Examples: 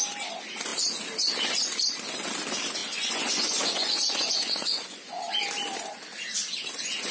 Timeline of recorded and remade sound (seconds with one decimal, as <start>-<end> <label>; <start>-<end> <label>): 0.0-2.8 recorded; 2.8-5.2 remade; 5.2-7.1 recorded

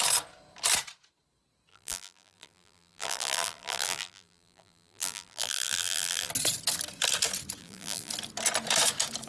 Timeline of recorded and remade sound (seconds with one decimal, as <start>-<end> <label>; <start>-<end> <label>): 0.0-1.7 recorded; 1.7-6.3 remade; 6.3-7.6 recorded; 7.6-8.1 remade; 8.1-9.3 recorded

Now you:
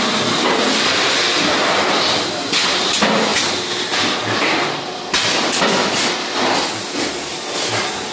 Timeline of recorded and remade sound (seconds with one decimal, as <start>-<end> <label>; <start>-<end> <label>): 0.0-8.1 recorded

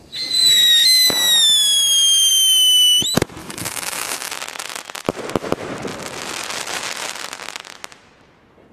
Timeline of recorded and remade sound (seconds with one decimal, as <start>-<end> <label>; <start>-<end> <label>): 0.0-3.4 recorded; 3.4-4.3 remade; 4.3-8.7 recorded

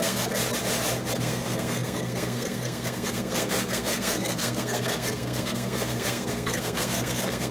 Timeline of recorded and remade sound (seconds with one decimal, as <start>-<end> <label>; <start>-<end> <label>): 0.0-0.4 remade; 0.4-1.2 recorded; 1.2-7.5 remade

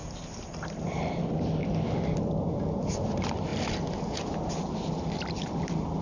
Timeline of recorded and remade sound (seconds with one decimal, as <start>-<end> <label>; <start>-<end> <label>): 0.0-1.2 remade; 1.2-6.0 recorded

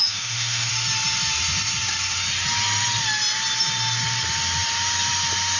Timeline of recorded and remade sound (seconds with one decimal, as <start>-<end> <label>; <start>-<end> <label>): 0.0-0.7 remade; 0.7-5.6 recorded

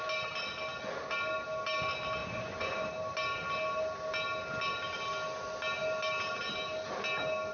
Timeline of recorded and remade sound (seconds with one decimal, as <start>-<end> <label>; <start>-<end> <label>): 0.0-2.2 recorded; 2.2-2.9 remade; 2.9-7.5 recorded